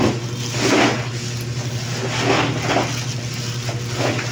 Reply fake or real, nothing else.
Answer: real